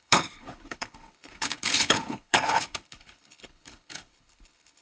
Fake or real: fake